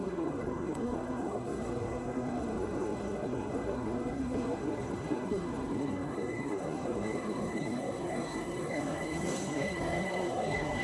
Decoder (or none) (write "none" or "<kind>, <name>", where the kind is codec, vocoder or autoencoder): codec, SNAC